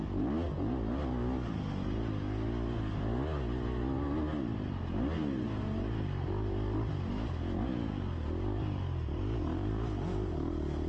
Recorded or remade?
recorded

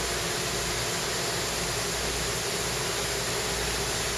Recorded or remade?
recorded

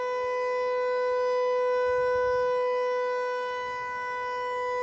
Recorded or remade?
recorded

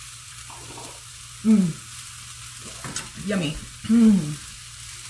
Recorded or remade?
recorded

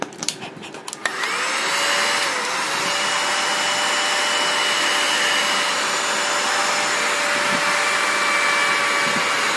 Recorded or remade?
recorded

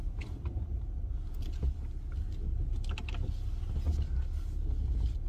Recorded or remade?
recorded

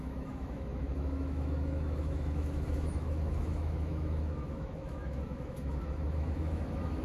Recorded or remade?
remade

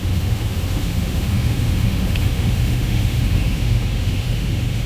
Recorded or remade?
remade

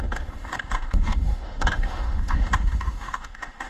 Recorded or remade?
remade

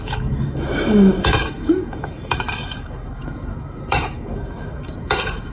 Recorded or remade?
remade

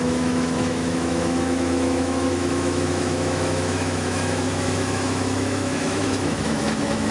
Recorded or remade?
remade